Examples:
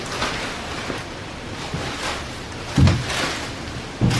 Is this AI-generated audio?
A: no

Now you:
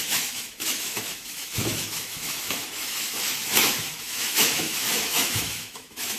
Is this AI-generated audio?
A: yes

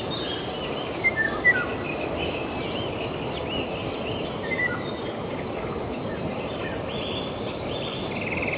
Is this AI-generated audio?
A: no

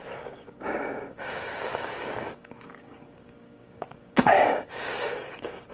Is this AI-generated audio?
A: yes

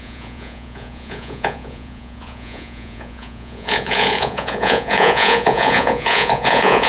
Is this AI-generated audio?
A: yes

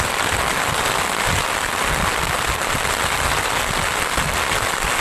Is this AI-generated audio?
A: no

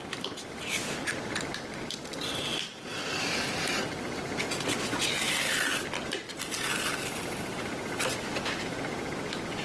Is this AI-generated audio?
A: no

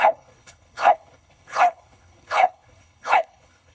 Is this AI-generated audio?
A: yes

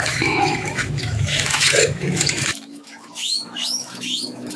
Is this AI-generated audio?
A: yes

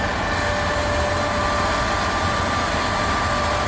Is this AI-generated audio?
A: no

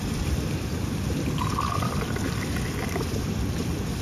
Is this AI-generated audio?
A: no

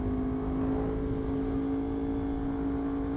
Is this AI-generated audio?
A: no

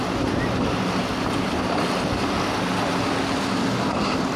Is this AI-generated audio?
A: no